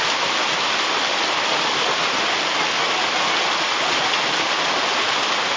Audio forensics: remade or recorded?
recorded